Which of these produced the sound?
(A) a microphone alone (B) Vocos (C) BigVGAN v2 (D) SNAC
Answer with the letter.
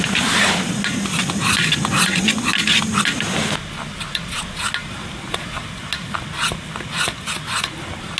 A